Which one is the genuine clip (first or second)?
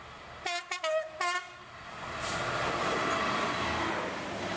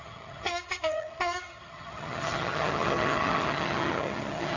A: first